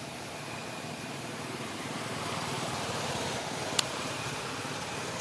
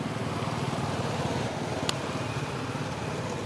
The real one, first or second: second